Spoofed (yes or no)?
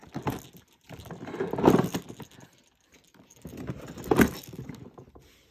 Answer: no